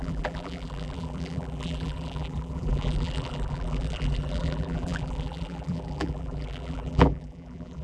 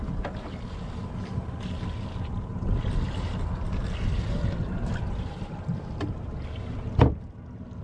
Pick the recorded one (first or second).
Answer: second